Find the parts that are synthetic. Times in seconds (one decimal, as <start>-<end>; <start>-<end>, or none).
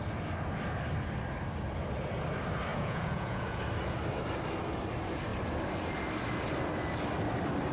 2.7-3.6